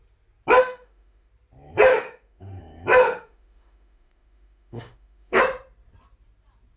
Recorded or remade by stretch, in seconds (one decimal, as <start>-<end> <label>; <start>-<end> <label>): 0.0-0.6 recorded; 0.6-1.3 remade; 1.3-1.9 recorded; 1.9-2.6 remade; 2.6-3.0 recorded; 3.0-5.4 remade; 5.4-6.8 recorded